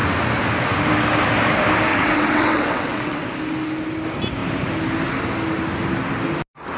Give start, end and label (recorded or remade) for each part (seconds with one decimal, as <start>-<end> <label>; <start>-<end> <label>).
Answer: 0.0-1.9 recorded; 1.9-3.3 remade; 3.3-6.8 recorded